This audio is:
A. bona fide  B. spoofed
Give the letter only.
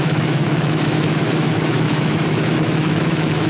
B